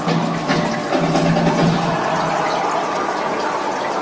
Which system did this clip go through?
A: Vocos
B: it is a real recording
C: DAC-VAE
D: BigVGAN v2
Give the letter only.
B